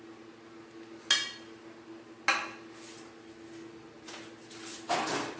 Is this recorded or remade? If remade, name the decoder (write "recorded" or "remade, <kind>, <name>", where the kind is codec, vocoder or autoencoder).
recorded